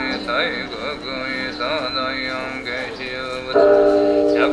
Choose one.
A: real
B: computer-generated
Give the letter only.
A